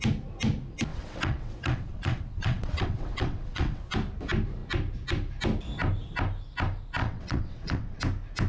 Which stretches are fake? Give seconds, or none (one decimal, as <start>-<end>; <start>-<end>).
0.9-3.8; 7.0-8.0